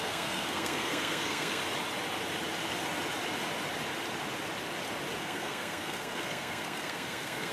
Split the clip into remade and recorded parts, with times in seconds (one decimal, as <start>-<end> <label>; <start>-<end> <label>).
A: 0.0-1.6 remade; 1.6-5.2 recorded; 5.2-7.5 remade